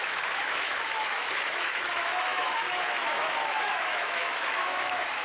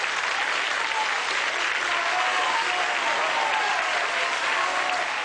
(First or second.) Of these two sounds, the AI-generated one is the first